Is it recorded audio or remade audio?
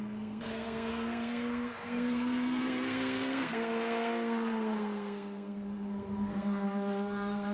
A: remade